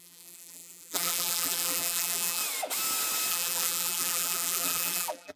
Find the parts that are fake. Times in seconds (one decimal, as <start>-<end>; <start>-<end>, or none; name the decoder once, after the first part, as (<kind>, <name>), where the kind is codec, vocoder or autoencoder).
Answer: 0.0-2.4 (vocoder, BigVGAN v2); 3.3-5.4

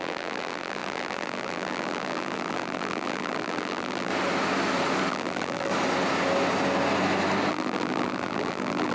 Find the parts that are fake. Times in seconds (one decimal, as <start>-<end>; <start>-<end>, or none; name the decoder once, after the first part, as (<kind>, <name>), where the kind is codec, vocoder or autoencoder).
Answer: 0.0-4.1 (vocoder, BigVGAN v2); 5.1-5.7; 7.5-8.9

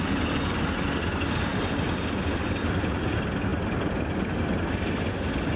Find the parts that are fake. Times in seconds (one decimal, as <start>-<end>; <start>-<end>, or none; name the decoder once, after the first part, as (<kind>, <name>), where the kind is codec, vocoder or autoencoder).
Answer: none

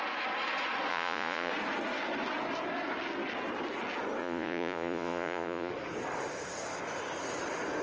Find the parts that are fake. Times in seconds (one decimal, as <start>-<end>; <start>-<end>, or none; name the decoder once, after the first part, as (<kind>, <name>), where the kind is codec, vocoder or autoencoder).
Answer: 0.9-1.5 (vocoder, Vocos); 4.2-5.7

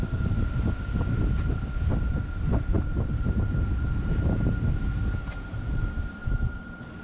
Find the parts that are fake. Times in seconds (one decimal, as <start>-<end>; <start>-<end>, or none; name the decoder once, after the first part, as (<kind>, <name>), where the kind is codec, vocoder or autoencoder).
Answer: 2.5-7.0 (vocoder, BigVGAN v2)

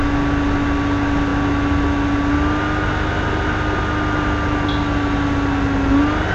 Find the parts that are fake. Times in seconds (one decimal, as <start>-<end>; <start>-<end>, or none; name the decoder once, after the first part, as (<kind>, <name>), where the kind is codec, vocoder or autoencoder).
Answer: none

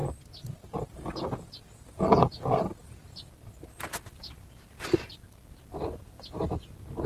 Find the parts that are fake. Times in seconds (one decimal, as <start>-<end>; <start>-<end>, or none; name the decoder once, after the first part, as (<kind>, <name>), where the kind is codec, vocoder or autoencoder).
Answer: none